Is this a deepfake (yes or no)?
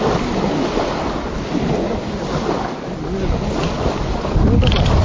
no